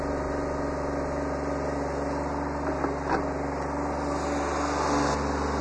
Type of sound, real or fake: real